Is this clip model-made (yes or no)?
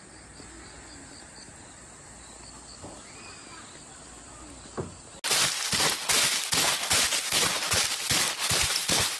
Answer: no